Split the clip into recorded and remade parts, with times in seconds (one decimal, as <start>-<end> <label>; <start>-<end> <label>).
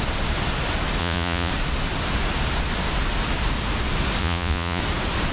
0.0-1.0 recorded; 1.0-1.5 remade; 1.5-4.2 recorded; 4.2-4.8 remade; 4.8-5.3 recorded